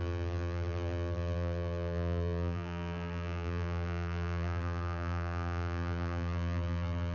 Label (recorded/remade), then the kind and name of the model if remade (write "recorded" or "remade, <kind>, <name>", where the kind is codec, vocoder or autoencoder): remade, vocoder, BigVGAN v2